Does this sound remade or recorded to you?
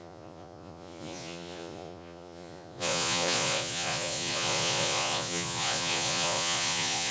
remade